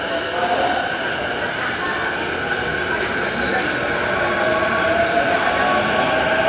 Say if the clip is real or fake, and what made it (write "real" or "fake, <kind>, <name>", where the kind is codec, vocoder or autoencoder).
real